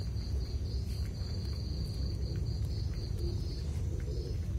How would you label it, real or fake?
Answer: real